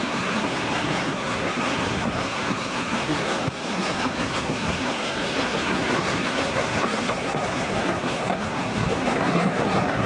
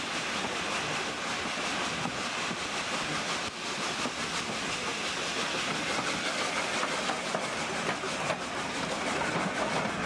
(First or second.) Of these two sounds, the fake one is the first